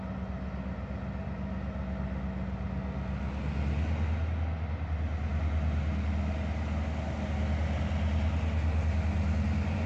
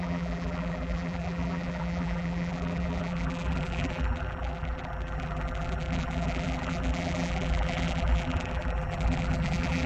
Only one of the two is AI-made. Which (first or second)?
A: second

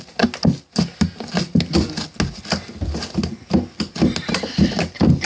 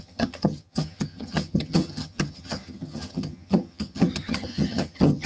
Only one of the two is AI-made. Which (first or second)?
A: second